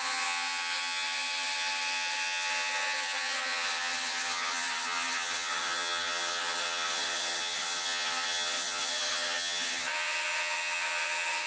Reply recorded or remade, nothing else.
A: remade